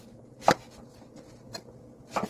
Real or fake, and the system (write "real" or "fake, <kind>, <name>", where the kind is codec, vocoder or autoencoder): real